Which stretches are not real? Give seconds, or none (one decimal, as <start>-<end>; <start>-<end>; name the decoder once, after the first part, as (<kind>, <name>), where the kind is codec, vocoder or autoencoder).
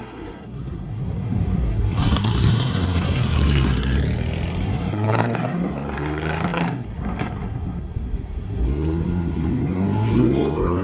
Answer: 0.0-4.0 (codec, SNAC); 4.6-10.8